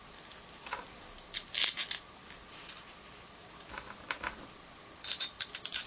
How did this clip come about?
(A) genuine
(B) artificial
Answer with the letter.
A